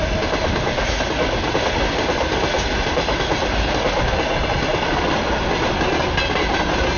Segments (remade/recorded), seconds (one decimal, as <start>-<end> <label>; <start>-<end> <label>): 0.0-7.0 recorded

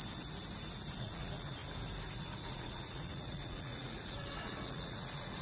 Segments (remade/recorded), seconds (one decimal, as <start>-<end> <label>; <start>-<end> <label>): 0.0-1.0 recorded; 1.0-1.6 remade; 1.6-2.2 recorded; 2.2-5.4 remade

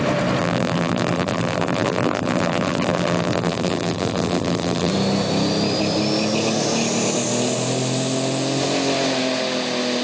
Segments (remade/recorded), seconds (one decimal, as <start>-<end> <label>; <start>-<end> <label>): 0.0-0.4 recorded; 0.4-4.9 remade; 4.9-10.0 recorded